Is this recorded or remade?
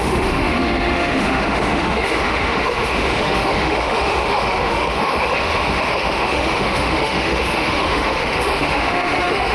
remade